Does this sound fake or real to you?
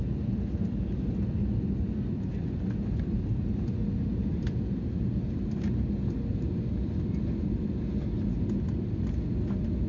real